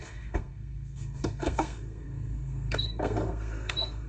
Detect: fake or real fake